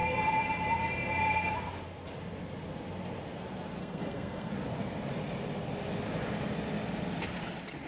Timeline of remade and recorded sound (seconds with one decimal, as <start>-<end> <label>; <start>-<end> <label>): 0.0-3.8 recorded; 3.8-4.5 remade; 4.5-7.9 recorded